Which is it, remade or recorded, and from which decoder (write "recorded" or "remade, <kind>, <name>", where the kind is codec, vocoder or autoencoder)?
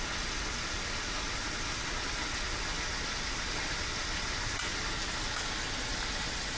recorded